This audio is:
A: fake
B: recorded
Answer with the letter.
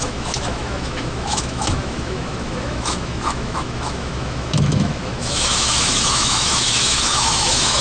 A